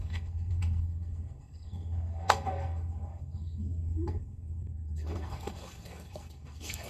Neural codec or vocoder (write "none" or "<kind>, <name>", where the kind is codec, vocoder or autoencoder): codec, SNAC